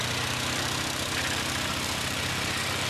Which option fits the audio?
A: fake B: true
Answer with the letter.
B